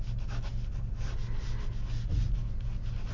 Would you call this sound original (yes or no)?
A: yes